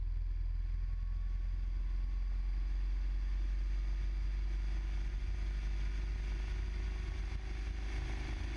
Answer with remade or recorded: recorded